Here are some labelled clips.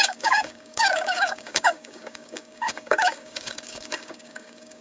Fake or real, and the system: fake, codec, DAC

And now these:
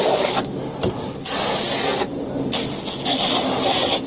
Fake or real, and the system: real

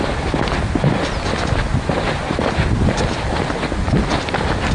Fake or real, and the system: real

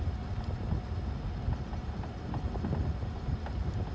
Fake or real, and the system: real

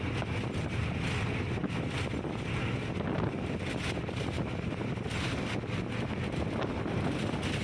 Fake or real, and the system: real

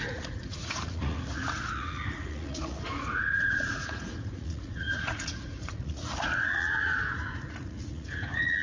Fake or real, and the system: fake, vocoder, Vocos